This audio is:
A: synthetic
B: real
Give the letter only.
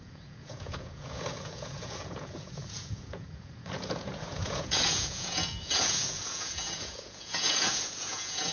A